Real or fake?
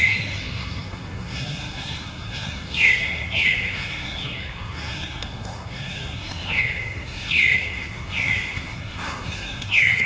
fake